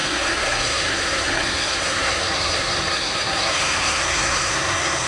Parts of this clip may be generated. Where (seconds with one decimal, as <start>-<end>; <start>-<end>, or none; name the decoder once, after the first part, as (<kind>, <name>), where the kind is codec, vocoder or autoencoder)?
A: 0.0-5.1 (codec, SNAC)